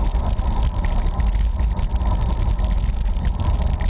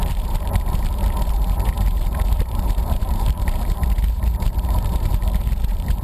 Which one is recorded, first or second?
first